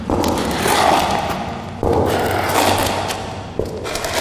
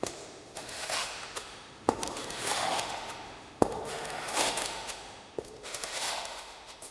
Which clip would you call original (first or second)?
first